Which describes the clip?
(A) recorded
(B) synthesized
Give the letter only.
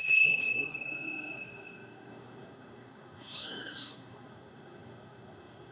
B